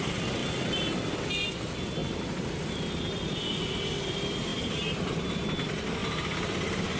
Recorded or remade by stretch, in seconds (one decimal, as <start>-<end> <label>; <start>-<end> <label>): 0.0-7.0 recorded